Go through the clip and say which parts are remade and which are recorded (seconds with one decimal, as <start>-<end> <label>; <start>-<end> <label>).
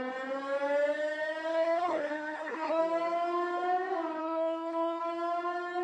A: 0.0-1.5 recorded; 1.5-2.8 remade; 2.8-4.2 recorded; 4.2-5.0 remade; 5.0-5.8 recorded